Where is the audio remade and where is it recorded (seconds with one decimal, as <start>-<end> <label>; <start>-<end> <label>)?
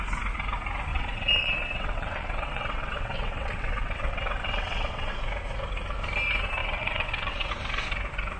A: 0.0-0.9 recorded; 0.9-5.1 remade; 5.1-6.6 recorded; 6.6-7.5 remade; 7.5-8.4 recorded